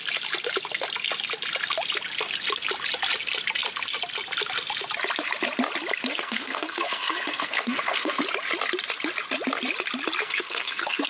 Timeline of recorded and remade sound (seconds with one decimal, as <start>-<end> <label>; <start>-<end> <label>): 0.0-6.1 recorded; 6.1-8.2 remade; 8.2-10.2 recorded; 10.2-11.1 remade